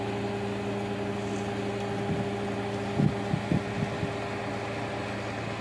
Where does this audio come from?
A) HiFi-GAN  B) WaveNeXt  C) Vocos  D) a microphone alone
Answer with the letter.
D